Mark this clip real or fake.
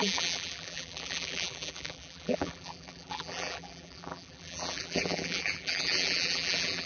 fake